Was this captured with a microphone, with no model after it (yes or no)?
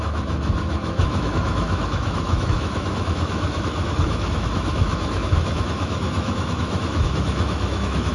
no